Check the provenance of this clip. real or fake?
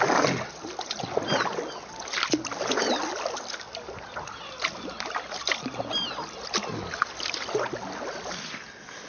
real